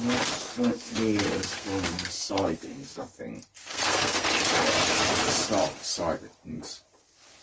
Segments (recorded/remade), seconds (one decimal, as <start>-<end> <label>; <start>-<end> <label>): 0.0-0.5 recorded; 0.5-3.2 remade; 3.2-3.6 recorded; 3.6-4.3 remade; 4.3-7.4 recorded